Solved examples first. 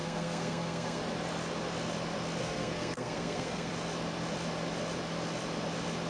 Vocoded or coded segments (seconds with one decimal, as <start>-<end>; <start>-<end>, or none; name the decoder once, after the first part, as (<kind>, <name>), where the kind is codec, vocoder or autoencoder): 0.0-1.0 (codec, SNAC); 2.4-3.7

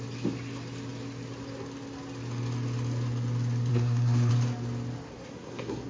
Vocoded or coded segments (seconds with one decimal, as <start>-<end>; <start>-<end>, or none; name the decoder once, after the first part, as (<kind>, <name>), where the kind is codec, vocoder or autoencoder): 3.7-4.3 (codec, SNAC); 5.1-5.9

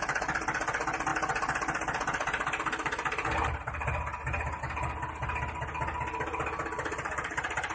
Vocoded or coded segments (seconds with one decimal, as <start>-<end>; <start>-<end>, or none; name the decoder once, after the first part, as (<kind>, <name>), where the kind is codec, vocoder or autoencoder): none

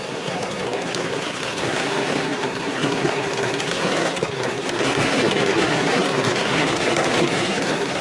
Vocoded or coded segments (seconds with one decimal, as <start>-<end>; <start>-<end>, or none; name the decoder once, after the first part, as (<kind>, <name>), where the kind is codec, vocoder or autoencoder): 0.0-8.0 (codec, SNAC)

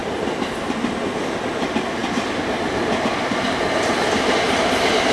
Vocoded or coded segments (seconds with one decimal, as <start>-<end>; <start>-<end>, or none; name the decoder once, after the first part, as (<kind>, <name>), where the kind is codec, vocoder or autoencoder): none

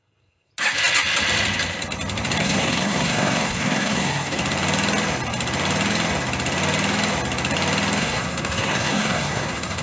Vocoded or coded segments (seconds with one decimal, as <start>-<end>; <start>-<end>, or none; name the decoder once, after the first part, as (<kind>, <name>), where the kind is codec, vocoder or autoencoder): 0.0-0.5 (codec, SNAC); 2.4-4.4; 8.0-9.8

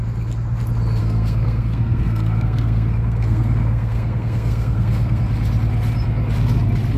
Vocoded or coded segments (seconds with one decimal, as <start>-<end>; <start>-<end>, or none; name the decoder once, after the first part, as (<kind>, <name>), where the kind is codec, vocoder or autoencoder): 1.0-5.2 (codec, SNAC)